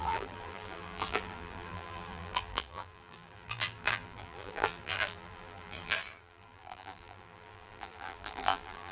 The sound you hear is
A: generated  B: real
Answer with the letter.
A